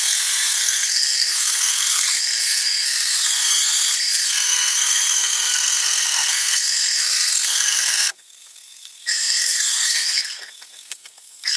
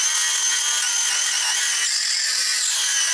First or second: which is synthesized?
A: first